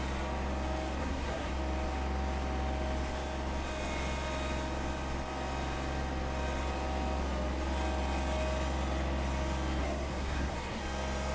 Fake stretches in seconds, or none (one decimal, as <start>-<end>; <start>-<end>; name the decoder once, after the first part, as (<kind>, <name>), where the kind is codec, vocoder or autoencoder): 1.0-1.5 (codec, SNAC); 9.8-10.8